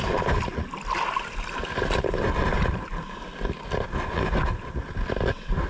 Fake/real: real